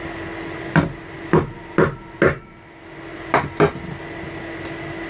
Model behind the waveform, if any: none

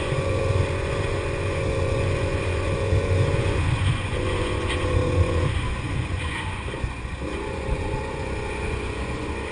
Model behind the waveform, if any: vocoder, Vocos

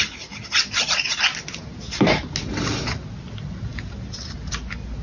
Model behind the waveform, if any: none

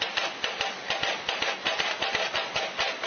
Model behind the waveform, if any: none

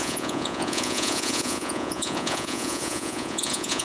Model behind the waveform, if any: vocoder, Vocos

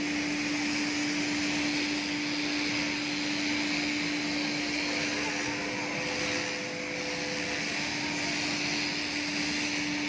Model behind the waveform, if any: none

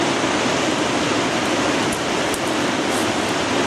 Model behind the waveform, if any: none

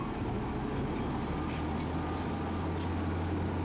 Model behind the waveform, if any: none